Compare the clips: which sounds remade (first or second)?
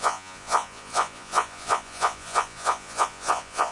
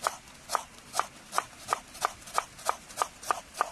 first